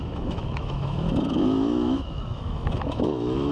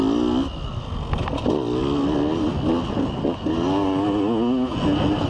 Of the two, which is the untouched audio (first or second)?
second